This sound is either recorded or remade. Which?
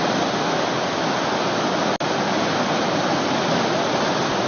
recorded